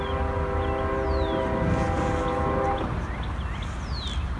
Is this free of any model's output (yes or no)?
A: yes